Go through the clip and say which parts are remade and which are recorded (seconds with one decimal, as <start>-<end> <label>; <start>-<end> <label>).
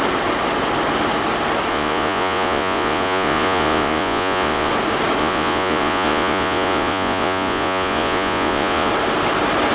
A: 0.0-1.7 recorded; 1.7-4.7 remade; 4.7-5.2 recorded; 5.2-8.9 remade; 8.9-9.7 recorded